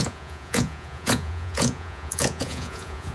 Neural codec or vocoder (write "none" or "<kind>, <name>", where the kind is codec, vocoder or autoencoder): vocoder, Vocos